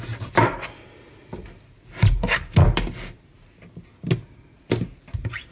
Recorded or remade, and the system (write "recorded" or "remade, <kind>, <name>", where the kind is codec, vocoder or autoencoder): recorded